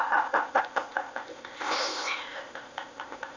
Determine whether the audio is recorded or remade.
remade